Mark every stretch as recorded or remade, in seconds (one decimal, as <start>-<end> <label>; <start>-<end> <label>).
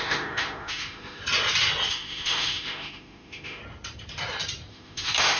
0.0-1.2 remade; 1.2-1.9 recorded; 1.9-3.6 remade; 3.6-4.7 recorded; 4.7-5.4 remade